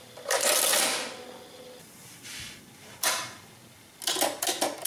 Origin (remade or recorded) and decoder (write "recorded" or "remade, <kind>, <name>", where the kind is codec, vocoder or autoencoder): recorded